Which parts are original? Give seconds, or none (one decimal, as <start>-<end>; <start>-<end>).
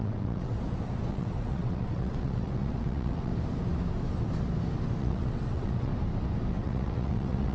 0.5-1.1; 3.3-5.0; 5.9-6.5